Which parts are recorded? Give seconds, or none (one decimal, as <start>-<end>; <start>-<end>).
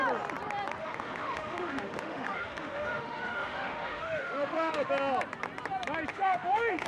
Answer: 0.0-0.8; 4.9-6.1